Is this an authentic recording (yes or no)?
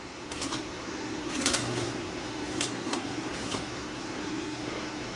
no